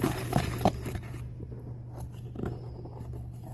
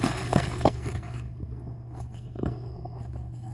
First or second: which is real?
first